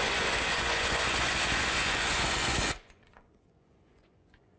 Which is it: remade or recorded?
remade